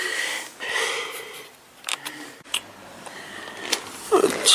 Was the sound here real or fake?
real